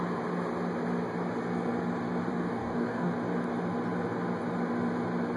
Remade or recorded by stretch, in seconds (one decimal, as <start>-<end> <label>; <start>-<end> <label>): 0.0-2.3 recorded; 2.3-3.1 remade; 3.1-5.4 recorded